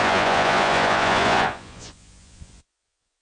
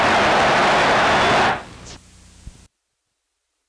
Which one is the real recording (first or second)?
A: second